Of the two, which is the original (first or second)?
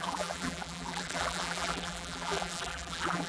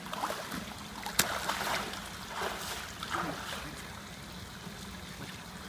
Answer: second